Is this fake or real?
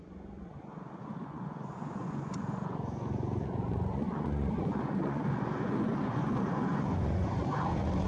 fake